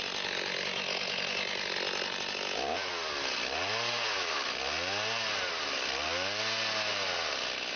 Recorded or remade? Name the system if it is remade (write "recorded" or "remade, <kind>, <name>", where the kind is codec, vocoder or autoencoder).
recorded